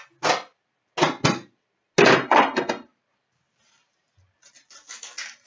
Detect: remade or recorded recorded